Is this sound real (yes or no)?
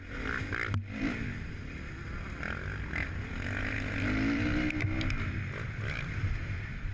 yes